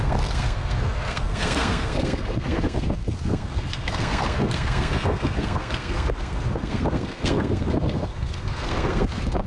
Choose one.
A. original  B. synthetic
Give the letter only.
B